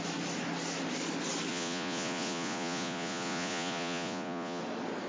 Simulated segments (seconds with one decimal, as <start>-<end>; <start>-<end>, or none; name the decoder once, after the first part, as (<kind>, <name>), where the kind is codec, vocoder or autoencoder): 1.5-4.6 (vocoder, Vocos)